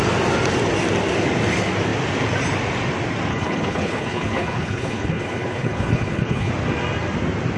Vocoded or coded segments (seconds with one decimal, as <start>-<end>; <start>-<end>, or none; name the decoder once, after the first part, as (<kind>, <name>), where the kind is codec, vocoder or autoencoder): 3.3-6.5 (codec, HILCodec)